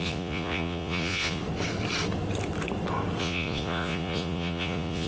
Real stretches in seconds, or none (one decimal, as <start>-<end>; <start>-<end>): 1.4-3.2